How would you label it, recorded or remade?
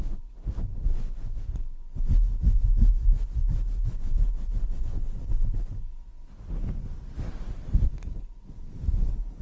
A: recorded